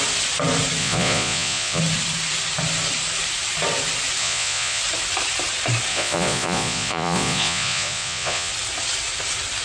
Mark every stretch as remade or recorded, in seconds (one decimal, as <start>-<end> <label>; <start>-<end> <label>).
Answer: 0.0-0.8 recorded; 0.8-1.8 remade; 1.8-4.2 recorded; 4.2-4.8 remade; 4.8-5.9 recorded; 5.9-8.5 remade; 8.5-9.6 recorded